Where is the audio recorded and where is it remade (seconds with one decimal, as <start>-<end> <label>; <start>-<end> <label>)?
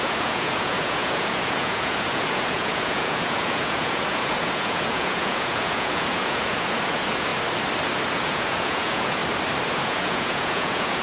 0.0-7.3 remade; 7.3-8.1 recorded; 8.1-9.2 remade; 9.2-9.7 recorded; 9.7-11.0 remade